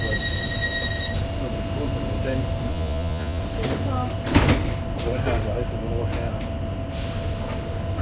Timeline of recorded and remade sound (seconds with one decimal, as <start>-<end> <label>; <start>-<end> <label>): 0.0-2.7 recorded; 2.7-3.4 remade; 3.4-8.0 recorded